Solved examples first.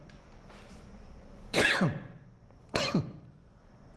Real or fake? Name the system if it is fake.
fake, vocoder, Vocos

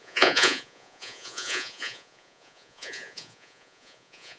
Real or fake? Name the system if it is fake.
fake, vocoder, Vocos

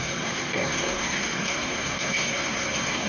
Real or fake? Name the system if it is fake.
fake, codec, SNAC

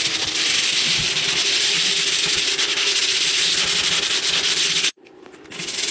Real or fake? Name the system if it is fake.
fake, vocoder, BigVGAN v2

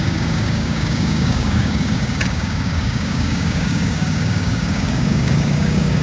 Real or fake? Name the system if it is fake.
fake, codec, DAC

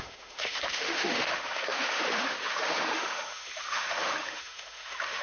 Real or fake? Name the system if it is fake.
fake, autoencoder, DAC-VAE